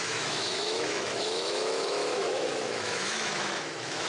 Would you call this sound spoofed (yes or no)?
yes